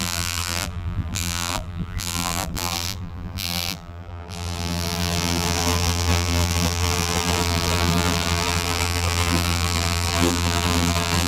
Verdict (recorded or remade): remade